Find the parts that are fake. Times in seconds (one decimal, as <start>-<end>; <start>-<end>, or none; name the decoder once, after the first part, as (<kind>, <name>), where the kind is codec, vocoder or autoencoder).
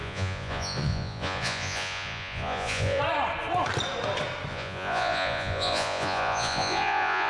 0.0-3.0 (vocoder, Vocos); 4.5-7.3